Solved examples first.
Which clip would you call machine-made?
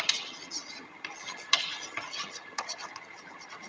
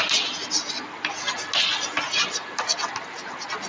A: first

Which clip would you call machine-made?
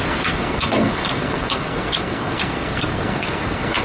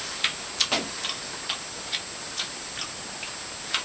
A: first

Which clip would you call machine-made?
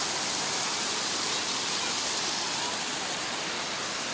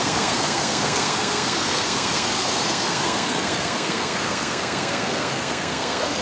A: second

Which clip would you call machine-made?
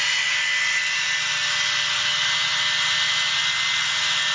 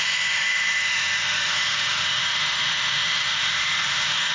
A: second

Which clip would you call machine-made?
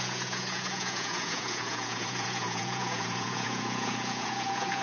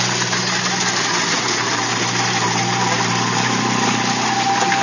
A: first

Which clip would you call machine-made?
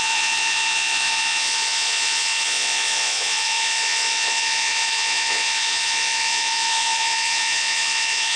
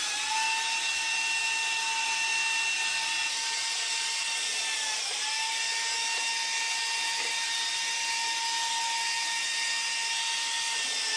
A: first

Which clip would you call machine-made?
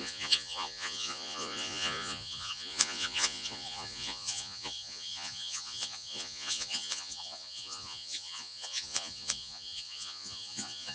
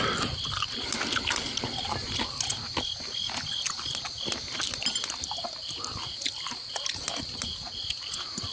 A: first